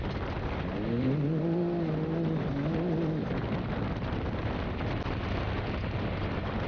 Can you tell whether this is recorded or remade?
recorded